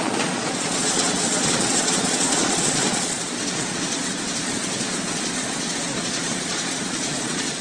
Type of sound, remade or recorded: remade